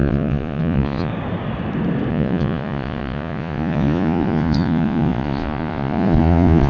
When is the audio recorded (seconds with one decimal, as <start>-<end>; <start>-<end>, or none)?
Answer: 1.1-2.1